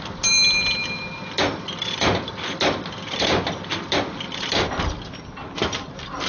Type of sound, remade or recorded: recorded